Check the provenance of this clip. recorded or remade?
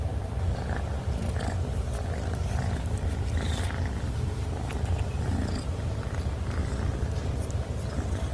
recorded